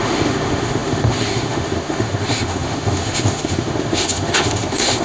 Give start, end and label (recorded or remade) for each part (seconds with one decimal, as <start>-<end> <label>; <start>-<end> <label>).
0.0-5.0 remade